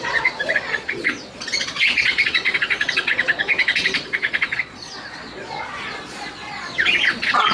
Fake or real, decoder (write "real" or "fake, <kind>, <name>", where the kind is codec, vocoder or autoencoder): fake, vocoder, Vocos